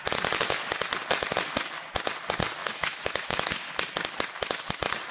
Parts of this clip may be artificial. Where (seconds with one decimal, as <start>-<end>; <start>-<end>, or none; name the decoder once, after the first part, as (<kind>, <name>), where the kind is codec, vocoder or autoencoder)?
2.6-3.7 (autoencoder, DAC-VAE)